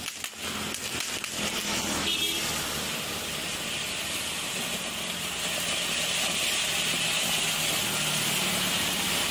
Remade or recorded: recorded